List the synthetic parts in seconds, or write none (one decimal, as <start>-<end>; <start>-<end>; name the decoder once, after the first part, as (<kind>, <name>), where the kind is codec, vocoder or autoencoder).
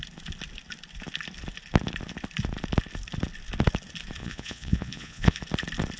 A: 4.2-5.4 (vocoder, Vocos)